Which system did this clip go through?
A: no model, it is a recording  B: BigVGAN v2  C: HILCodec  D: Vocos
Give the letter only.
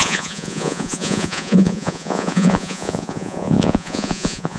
D